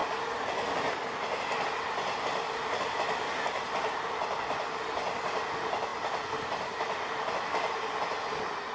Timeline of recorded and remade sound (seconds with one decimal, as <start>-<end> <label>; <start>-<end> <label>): 0.0-8.7 recorded